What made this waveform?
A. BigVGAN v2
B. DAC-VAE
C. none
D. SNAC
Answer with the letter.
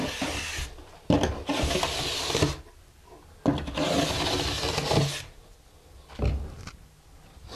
C